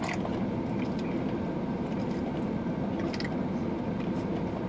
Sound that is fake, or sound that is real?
real